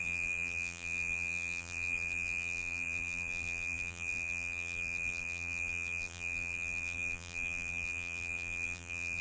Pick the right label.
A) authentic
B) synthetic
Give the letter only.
B